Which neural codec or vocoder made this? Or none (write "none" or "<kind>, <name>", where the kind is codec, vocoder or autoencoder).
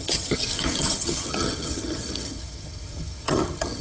vocoder, HiFi-GAN